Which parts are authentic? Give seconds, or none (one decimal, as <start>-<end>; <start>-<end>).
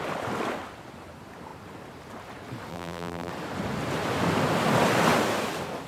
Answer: 0.0-2.7; 3.3-5.9